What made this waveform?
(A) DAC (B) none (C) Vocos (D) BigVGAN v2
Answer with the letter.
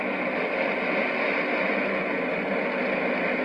B